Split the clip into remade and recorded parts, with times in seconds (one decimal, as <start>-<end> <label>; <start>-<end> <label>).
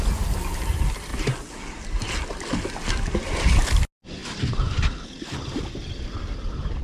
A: 0.0-4.2 recorded; 4.2-5.2 remade; 5.2-6.8 recorded